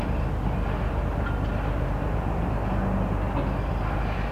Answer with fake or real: real